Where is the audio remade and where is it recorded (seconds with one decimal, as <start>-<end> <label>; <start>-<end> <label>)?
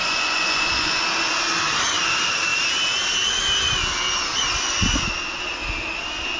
0.0-1.0 remade; 1.0-6.4 recorded